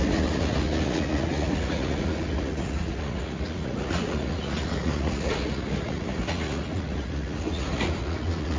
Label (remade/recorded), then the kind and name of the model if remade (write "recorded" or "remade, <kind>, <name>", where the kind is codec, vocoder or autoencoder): remade, vocoder, Vocos